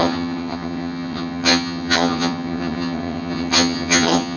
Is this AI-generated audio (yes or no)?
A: yes